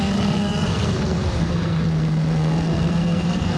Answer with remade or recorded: remade